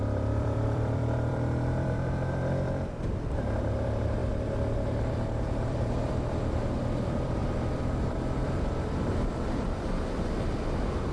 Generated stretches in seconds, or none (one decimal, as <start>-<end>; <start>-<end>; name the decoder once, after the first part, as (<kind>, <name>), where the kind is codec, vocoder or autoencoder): 0.0-4.2 (vocoder, BigVGAN v2); 5.1-11.1